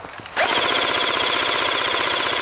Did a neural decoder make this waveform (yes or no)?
no